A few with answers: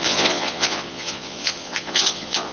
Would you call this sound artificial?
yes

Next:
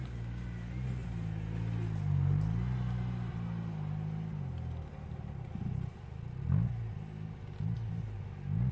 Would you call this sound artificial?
no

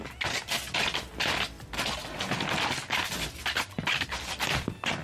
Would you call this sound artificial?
no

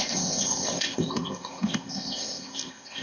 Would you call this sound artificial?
yes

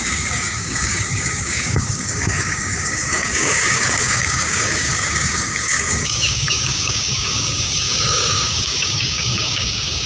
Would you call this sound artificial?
yes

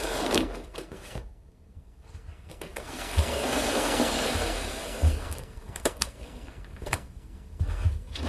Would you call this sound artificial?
yes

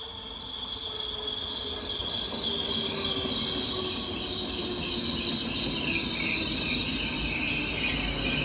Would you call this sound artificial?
no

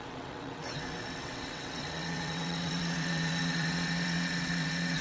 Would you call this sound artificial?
yes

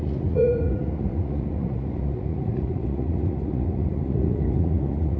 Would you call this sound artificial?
yes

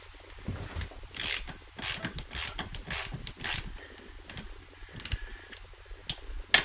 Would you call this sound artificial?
no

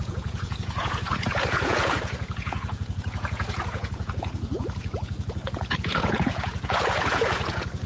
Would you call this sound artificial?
yes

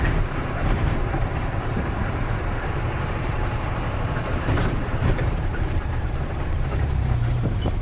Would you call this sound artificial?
yes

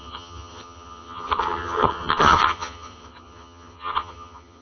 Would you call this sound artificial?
yes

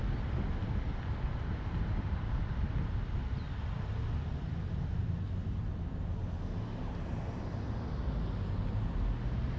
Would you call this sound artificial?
no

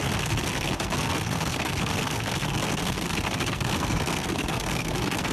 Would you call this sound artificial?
yes